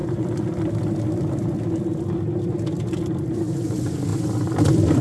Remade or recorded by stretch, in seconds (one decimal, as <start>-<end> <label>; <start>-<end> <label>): 0.0-4.1 recorded; 4.1-5.0 remade